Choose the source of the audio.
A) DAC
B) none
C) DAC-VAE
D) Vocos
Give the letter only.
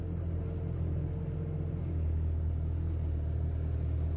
B